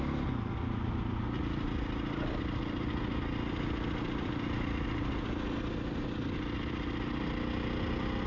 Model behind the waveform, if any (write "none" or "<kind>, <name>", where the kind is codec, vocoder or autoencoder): none